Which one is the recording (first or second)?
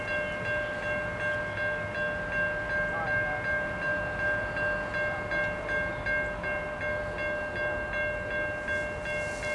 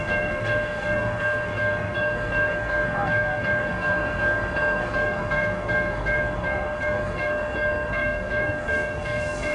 first